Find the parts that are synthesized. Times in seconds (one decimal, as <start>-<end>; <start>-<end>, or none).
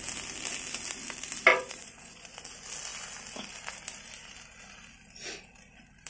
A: 1.5-2.4